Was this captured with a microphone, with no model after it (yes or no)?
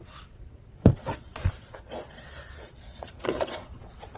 no